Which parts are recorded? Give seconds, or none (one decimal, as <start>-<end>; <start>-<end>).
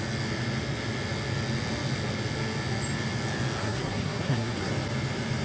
0.0-3.6; 4.7-5.4